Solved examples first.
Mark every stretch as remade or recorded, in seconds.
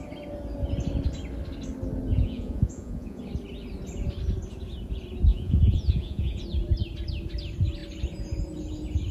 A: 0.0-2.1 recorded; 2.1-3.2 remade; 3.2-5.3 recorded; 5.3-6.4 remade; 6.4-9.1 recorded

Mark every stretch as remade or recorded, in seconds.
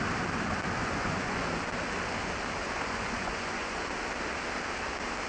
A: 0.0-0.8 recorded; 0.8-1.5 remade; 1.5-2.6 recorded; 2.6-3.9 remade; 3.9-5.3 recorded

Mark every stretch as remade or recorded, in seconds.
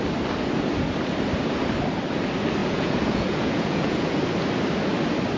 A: 0.0-2.6 recorded; 2.6-4.2 remade; 4.2-5.4 recorded